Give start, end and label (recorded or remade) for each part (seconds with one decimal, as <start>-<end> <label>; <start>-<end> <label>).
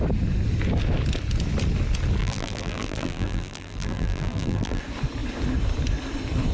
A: 0.0-2.2 recorded; 2.2-4.8 remade; 4.8-6.5 recorded